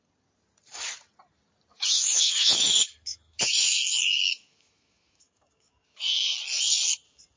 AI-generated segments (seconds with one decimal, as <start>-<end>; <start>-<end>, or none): 1.7-6.1